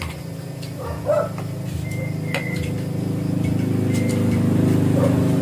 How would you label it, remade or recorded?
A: recorded